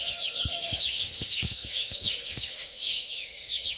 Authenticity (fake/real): fake